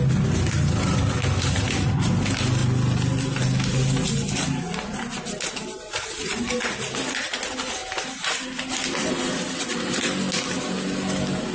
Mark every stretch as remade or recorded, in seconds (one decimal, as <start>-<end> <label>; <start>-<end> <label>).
0.0-11.5 recorded